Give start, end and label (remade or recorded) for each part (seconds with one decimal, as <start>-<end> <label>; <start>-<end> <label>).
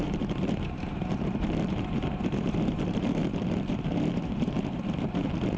0.0-3.2 remade; 3.2-3.7 recorded; 3.7-5.6 remade